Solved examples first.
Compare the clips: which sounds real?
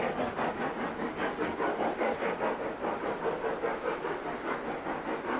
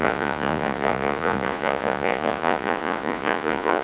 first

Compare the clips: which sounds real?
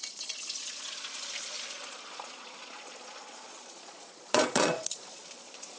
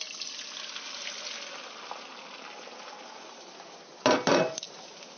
second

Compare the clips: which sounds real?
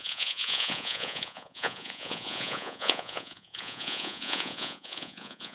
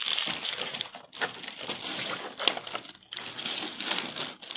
second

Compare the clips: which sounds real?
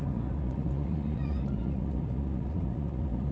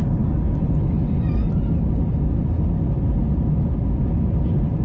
second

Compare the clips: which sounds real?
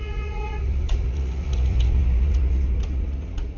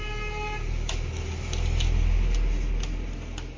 second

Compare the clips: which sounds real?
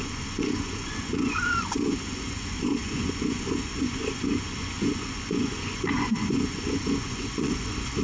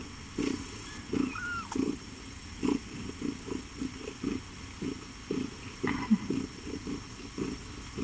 second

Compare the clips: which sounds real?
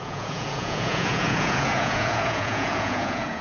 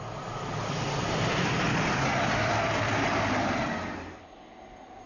second